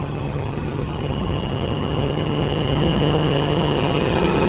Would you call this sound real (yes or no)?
no